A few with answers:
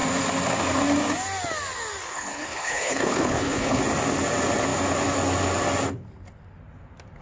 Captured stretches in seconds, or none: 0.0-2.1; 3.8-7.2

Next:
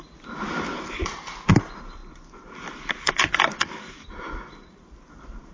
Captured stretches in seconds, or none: 0.0-1.0; 1.5-2.0